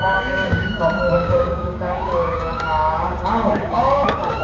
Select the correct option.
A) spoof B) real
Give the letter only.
A